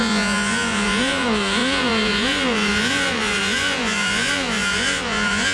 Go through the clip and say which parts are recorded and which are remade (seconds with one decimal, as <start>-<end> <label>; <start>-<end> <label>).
0.0-5.5 remade